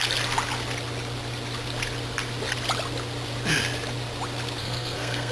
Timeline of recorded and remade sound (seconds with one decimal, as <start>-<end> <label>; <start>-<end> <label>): 0.0-4.6 recorded; 4.6-5.3 remade